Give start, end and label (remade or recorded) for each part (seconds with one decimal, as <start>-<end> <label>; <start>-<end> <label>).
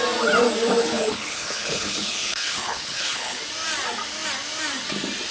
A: 0.0-0.8 recorded; 0.8-3.4 remade; 3.4-5.3 recorded